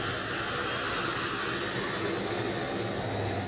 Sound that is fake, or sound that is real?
real